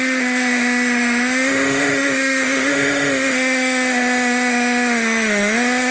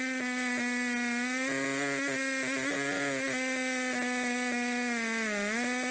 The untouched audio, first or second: second